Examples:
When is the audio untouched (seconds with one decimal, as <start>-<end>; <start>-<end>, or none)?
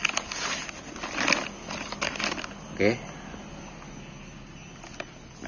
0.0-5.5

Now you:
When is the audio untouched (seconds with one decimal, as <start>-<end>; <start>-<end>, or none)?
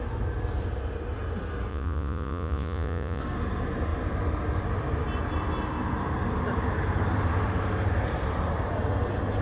0.0-1.7; 3.2-9.4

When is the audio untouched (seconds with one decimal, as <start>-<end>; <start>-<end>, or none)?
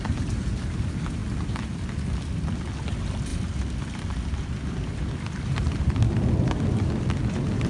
0.0-3.3; 6.9-7.7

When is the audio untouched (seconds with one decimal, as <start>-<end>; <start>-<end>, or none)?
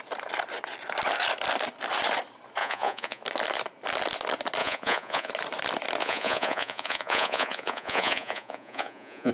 0.0-2.6; 3.2-4.6; 5.3-6.0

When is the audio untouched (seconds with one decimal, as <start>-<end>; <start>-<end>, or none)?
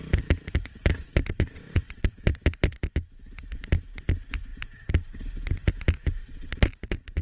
0.0-1.1; 2.4-6.2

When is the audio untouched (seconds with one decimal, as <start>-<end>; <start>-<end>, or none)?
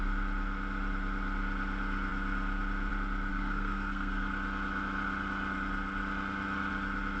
0.0-3.3; 4.3-7.2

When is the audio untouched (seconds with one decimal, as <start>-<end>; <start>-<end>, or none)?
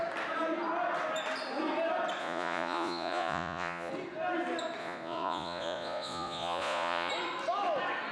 0.0-2.2; 3.9-4.8; 7.1-8.1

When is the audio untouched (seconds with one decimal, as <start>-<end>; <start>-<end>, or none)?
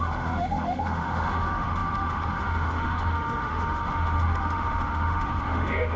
none